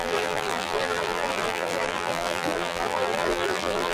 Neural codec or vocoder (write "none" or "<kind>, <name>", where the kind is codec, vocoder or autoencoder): vocoder, BigVGAN v2